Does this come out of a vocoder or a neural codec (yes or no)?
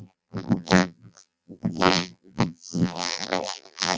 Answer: yes